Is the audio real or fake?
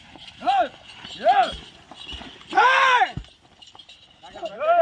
real